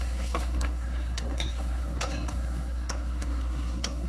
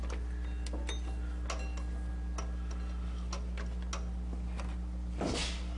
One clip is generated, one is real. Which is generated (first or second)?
first